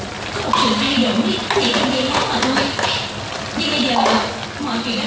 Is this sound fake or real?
real